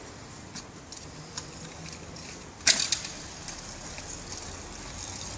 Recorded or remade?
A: recorded